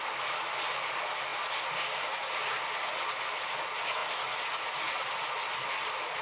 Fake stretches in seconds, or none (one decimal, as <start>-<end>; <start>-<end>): none